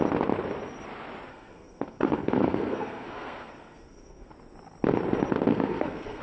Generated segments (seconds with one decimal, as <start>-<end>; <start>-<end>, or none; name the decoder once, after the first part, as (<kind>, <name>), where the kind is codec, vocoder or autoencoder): 1.3-4.3 (codec, SNAC); 5.5-6.2